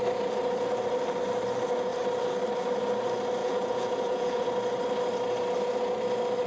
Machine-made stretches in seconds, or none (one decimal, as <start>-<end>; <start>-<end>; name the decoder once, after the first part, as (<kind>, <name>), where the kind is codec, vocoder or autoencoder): 3.4-4.5 (vocoder, Vocos)